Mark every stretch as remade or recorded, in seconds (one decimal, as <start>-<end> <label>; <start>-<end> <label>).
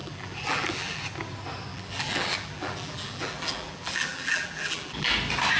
0.0-1.0 remade; 1.0-1.7 recorded; 1.7-5.1 remade; 5.1-5.6 recorded